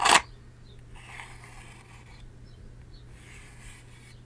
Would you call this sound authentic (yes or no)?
yes